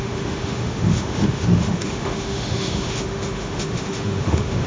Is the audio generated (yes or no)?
yes